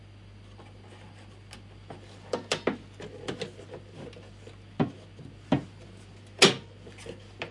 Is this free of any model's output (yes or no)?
yes